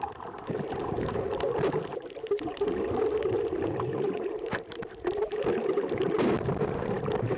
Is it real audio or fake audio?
fake